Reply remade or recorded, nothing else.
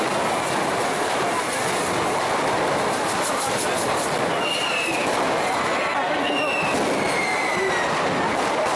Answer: recorded